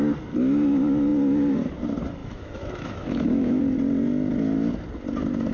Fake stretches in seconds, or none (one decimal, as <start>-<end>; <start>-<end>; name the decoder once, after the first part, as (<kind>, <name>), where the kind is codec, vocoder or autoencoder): 2.2-3.6 (autoencoder, DAC-VAE)